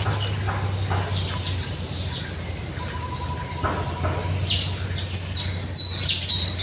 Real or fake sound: real